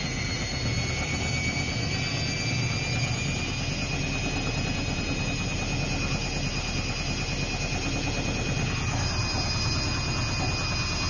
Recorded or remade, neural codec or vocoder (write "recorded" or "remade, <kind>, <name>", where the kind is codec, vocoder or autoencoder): recorded